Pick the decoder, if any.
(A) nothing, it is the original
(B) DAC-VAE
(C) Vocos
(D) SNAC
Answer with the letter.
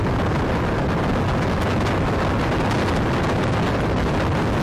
A